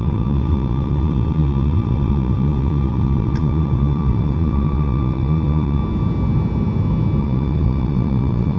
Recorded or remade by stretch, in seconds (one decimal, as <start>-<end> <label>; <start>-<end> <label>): 0.0-5.8 remade; 5.8-7.2 recorded; 7.2-8.6 remade